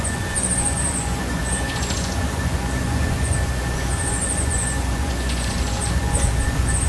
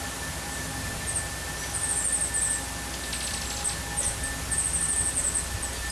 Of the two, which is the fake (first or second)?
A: first